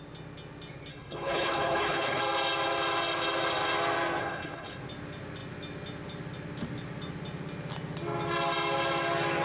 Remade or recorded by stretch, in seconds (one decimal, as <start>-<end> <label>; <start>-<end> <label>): 0.0-0.9 recorded; 0.9-2.2 remade; 2.2-4.2 recorded; 4.2-4.8 remade; 4.8-9.4 recorded